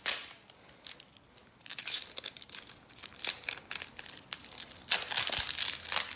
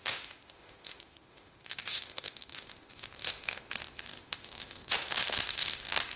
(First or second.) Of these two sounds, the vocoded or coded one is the second